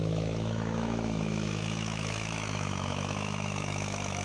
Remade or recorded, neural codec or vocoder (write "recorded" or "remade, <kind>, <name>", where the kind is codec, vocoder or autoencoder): remade, autoencoder, DAC-VAE